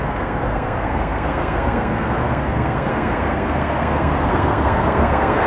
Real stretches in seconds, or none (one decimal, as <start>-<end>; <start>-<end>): none